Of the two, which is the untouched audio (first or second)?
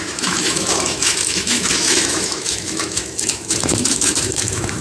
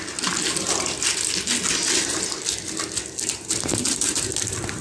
second